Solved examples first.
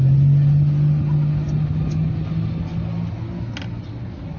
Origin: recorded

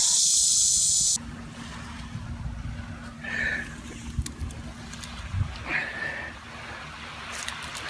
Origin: recorded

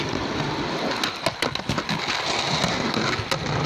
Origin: recorded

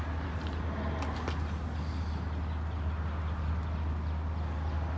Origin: recorded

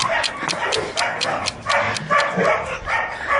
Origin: recorded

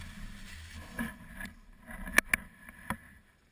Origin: recorded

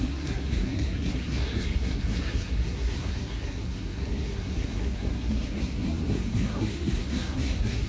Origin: remade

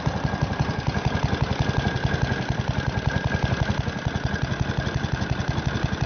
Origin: recorded